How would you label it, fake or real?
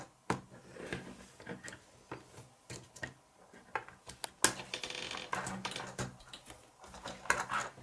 real